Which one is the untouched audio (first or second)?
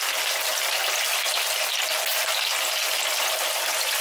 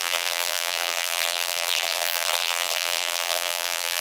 first